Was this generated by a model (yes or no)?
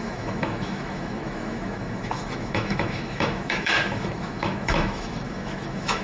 yes